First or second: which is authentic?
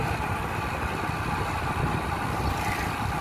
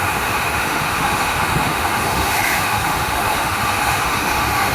first